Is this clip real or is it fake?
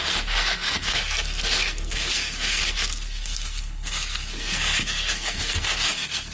fake